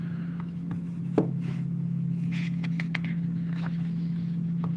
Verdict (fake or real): fake